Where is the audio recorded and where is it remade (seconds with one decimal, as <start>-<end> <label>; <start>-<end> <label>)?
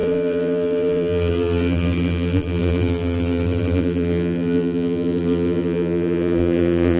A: 0.0-7.0 remade